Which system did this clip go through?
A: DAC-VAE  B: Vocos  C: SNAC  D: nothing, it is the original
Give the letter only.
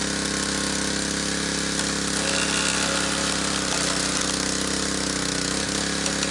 D